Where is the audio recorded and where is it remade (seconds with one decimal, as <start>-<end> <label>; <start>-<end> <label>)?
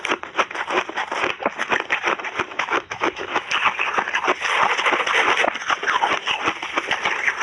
0.0-2.5 recorded; 2.5-3.5 remade; 3.5-7.4 recorded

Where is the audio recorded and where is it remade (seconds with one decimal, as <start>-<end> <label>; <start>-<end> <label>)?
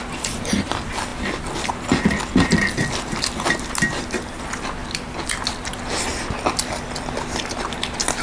0.0-8.2 recorded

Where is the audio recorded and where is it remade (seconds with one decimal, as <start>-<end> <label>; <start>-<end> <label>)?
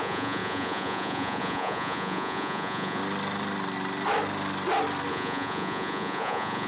0.0-3.0 remade; 3.0-5.1 recorded; 5.1-6.7 remade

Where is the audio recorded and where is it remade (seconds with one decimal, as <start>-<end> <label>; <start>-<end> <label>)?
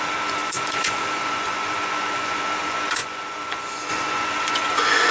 0.0-5.1 remade